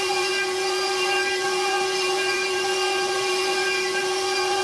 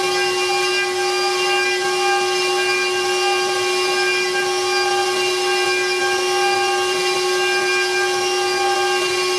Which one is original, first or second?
second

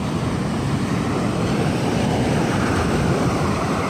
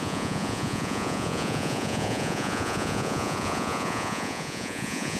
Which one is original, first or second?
first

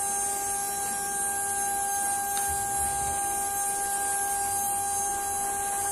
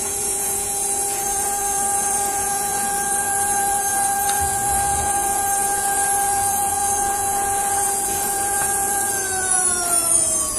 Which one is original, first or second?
first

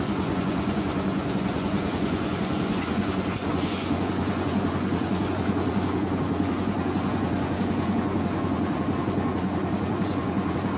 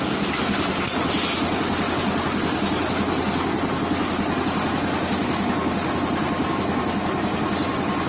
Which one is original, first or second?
second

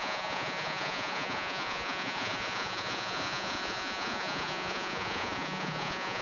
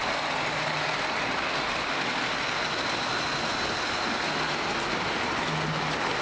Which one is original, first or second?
second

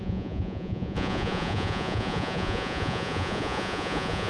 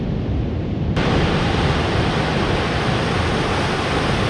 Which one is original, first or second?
second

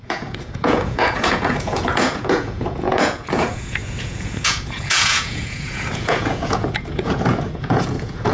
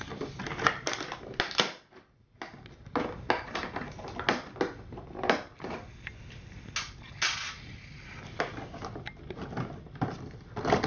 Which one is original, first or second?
second